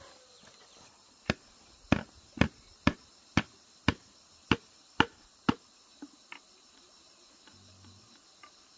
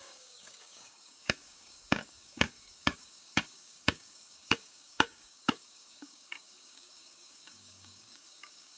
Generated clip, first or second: second